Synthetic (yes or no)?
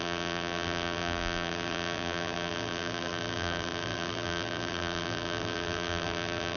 yes